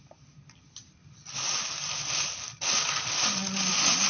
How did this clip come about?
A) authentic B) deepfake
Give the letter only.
A